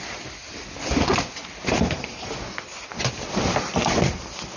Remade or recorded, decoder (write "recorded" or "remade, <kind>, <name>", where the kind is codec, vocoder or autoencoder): recorded